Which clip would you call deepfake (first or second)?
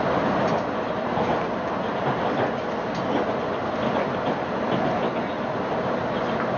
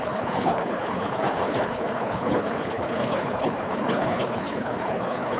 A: second